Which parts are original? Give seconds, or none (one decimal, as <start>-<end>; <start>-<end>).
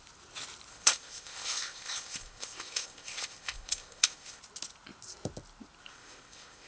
0.0-0.7; 4.4-5.9